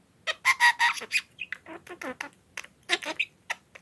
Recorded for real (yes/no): yes